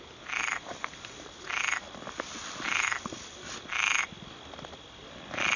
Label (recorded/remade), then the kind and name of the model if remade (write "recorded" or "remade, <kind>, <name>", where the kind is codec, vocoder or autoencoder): recorded